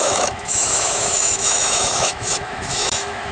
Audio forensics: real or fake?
fake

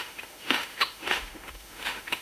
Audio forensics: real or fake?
fake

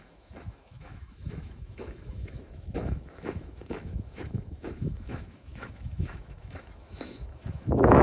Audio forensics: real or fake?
fake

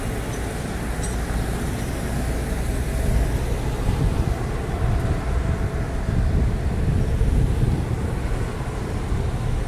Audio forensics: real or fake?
real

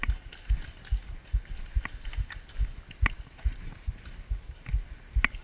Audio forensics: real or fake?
real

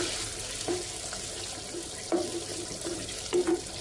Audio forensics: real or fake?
real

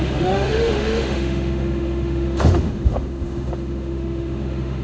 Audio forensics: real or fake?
fake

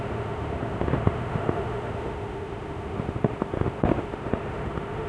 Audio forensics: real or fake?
fake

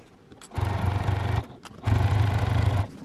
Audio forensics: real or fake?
real